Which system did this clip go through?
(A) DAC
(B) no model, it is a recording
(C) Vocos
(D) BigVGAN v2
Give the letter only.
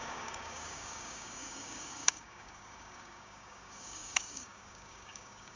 A